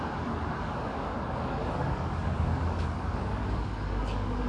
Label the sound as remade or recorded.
remade